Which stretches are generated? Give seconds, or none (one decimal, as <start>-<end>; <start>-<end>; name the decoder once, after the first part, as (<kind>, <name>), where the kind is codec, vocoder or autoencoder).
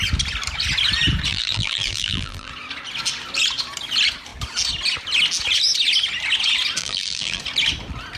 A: 1.3-2.5 (vocoder, BigVGAN v2); 6.8-7.4